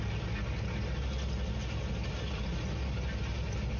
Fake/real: real